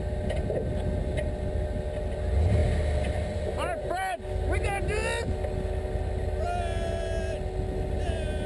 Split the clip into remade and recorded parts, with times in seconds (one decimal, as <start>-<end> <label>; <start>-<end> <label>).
0.0-8.5 recorded